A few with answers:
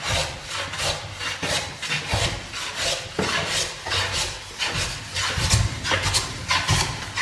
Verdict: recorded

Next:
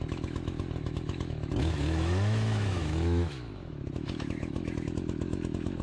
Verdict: remade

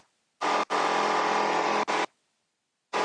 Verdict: recorded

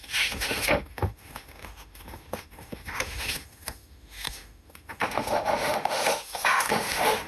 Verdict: remade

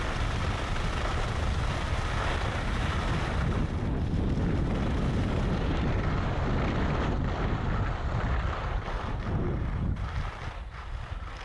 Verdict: recorded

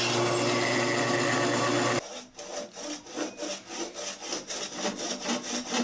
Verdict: recorded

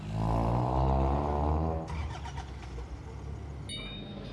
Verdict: recorded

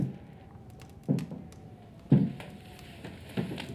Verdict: recorded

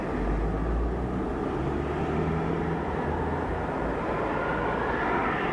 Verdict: recorded